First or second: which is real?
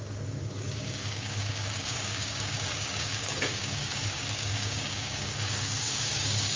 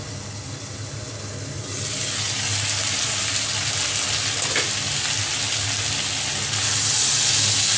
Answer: second